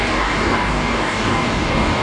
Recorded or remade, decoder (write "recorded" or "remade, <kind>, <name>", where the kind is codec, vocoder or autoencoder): remade, codec, DAC